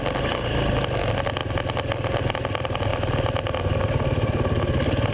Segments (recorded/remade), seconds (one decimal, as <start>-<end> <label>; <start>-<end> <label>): 0.0-5.1 recorded